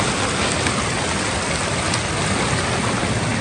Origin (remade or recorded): recorded